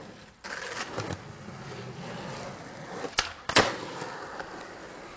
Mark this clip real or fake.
real